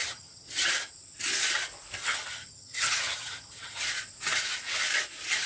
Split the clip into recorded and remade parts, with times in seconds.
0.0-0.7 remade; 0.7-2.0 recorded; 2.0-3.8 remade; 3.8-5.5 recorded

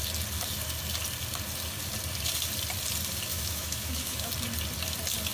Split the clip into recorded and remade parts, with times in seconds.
0.0-3.3 recorded; 3.3-4.3 remade; 4.3-5.3 recorded